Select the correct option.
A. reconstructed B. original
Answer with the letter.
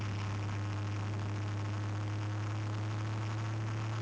B